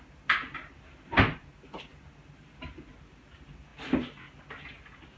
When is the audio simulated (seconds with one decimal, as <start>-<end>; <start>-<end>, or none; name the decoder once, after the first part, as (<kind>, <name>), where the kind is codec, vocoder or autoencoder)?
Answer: none